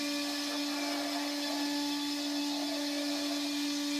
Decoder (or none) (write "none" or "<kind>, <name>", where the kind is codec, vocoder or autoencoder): none